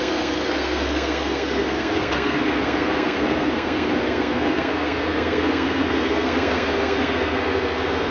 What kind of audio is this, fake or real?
fake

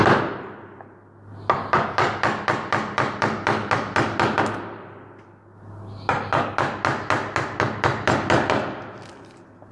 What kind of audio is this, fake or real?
real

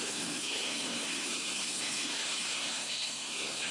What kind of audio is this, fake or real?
fake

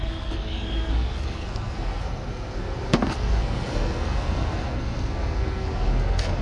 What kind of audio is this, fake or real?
fake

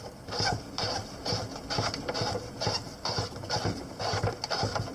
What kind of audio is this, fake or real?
real